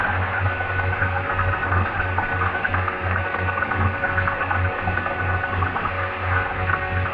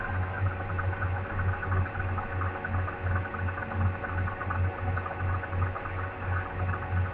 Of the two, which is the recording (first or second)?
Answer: second